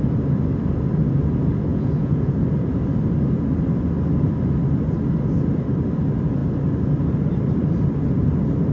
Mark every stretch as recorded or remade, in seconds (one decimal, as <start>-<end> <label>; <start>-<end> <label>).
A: 0.0-1.7 recorded; 1.7-2.3 remade; 2.3-8.7 recorded

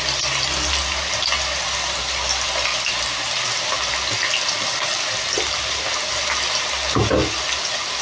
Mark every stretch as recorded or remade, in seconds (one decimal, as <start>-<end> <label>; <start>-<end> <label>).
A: 0.0-8.0 recorded

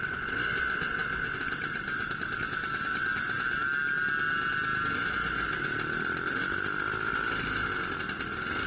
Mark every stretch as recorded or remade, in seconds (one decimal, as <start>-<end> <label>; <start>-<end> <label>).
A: 0.0-8.7 recorded

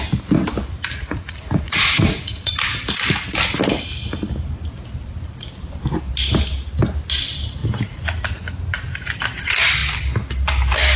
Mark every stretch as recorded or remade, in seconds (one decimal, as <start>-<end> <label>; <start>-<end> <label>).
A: 0.0-0.7 recorded; 0.7-2.5 remade; 2.5-11.0 recorded